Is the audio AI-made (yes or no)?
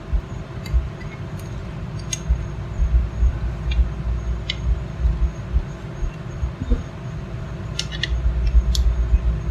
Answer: no